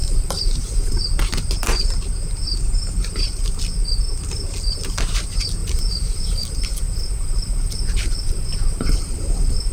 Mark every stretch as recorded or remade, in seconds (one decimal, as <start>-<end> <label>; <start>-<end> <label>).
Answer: 0.0-0.9 remade; 0.9-5.6 recorded; 5.6-9.7 remade

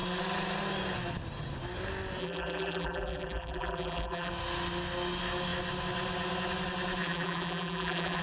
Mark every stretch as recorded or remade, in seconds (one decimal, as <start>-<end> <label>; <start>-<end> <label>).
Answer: 0.0-2.2 recorded; 2.2-4.3 remade; 4.3-7.0 recorded; 7.0-8.2 remade

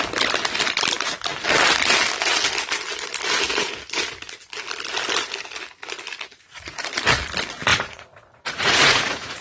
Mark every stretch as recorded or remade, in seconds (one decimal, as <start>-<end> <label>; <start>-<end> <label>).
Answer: 0.0-6.3 recorded; 6.3-7.0 remade; 7.0-7.7 recorded; 7.7-9.4 remade

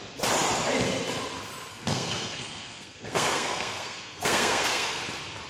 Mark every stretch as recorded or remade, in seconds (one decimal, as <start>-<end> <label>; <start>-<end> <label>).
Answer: 0.0-1.7 recorded; 1.7-5.0 remade; 5.0-5.5 recorded

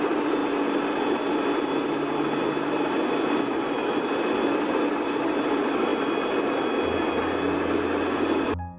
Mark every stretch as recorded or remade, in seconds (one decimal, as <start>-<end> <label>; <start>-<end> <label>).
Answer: 0.0-8.8 recorded

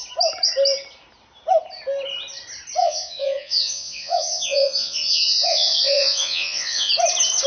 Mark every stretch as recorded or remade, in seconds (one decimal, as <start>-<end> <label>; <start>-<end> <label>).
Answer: 0.0-2.8 recorded; 2.8-6.9 remade; 6.9-7.5 recorded

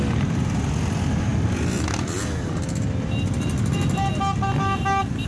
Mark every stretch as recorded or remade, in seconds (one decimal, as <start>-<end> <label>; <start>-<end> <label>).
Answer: 0.0-5.3 recorded